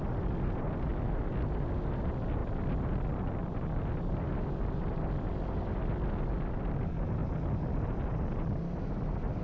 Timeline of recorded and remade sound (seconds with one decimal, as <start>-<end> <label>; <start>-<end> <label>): 0.0-9.4 recorded

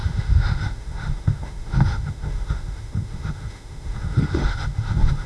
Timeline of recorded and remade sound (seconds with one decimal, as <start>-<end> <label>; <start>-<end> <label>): 0.0-5.3 remade

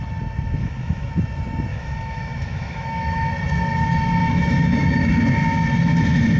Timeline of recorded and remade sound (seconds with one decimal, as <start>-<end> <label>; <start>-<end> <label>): 0.0-0.6 recorded; 0.6-1.1 remade; 1.1-1.7 recorded; 1.7-3.3 remade; 3.3-4.2 recorded; 4.2-5.1 remade; 5.1-6.4 recorded

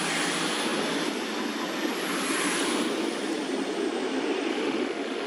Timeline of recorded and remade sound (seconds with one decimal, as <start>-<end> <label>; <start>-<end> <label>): 0.0-4.5 recorded; 4.5-5.3 remade

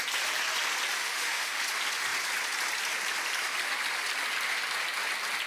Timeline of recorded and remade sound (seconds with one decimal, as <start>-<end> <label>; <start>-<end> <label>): 0.0-1.0 recorded; 1.0-1.6 remade; 1.6-5.5 recorded